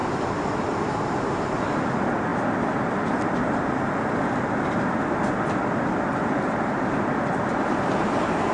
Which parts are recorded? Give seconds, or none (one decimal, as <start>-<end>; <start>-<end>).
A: 0.0-8.5